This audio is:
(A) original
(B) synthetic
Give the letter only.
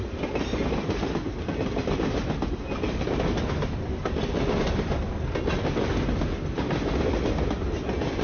A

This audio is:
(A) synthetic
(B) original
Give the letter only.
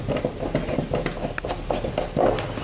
B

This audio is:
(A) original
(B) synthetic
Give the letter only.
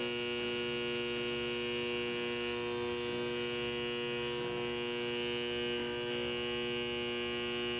A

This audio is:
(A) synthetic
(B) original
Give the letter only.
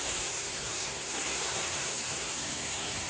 A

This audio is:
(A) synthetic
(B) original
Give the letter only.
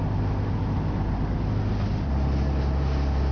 B